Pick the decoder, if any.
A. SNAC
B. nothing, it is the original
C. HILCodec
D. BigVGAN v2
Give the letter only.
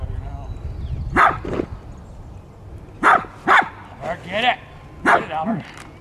B